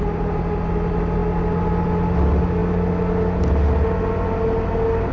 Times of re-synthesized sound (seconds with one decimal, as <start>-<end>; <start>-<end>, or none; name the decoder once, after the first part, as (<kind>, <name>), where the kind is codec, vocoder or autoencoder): none